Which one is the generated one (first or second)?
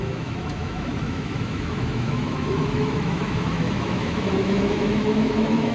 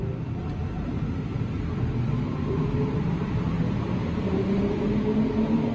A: first